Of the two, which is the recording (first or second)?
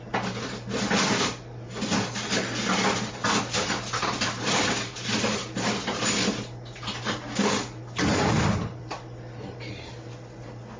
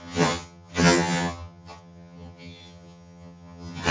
first